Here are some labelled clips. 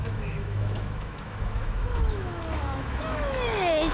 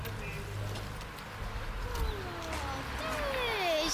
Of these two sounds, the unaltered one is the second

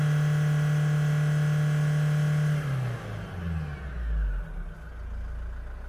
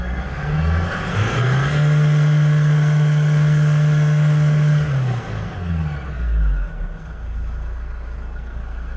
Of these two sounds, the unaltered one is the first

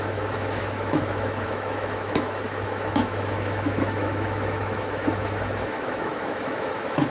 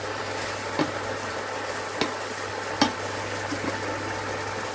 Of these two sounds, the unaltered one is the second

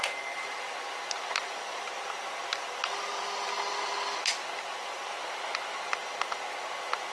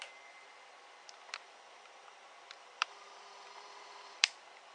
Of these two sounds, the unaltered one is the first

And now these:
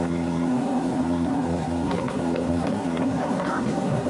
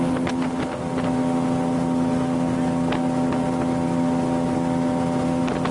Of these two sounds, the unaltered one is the second